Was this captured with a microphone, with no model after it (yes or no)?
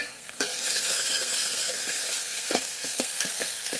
no